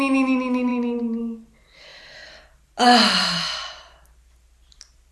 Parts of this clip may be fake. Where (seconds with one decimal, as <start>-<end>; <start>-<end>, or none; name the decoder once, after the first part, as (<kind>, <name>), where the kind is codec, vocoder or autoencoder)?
none